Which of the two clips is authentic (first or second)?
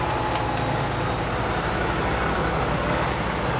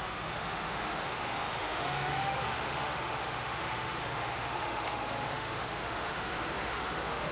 first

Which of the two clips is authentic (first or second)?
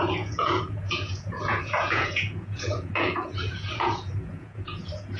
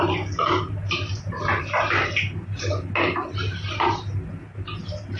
second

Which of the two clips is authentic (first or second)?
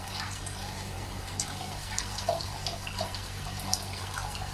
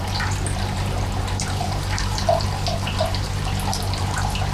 second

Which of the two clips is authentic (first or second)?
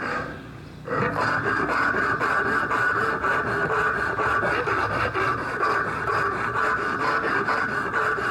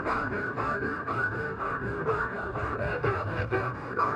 first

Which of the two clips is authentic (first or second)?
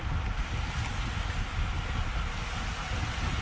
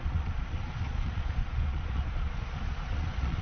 first